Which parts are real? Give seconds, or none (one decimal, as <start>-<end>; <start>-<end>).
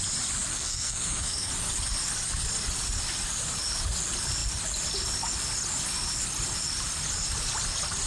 0.0-0.5; 1.5-8.1